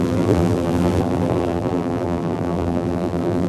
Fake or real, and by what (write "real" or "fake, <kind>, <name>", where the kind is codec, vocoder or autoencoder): fake, vocoder, BigVGAN v2